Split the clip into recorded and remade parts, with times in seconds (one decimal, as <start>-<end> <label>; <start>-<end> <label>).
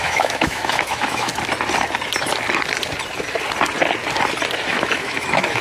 0.0-1.3 remade; 1.3-4.7 recorded; 4.7-5.6 remade